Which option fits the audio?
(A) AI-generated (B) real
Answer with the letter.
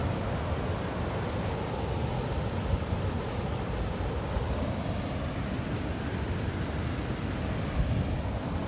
B